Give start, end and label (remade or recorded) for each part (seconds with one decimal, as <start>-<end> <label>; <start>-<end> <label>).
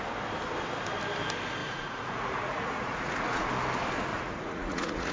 0.0-1.6 recorded; 1.6-3.5 remade; 3.5-4.1 recorded; 4.1-5.1 remade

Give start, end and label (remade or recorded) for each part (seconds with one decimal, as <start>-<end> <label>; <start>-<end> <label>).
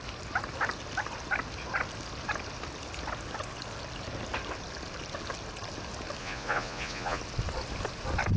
0.0-6.2 recorded; 6.2-7.2 remade; 7.2-8.4 recorded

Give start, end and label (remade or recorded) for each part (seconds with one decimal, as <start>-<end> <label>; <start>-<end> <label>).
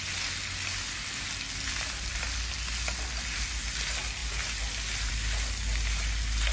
0.0-6.5 recorded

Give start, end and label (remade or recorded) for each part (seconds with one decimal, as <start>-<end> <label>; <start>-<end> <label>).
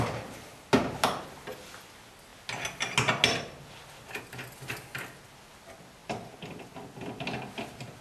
0.0-8.0 recorded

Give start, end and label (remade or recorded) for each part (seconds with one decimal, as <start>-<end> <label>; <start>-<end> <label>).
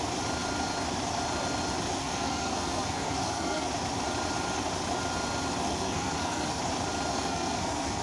0.0-2.0 recorded; 2.0-3.7 remade; 3.7-5.7 recorded; 5.7-6.6 remade; 6.6-7.1 recorded; 7.1-8.0 remade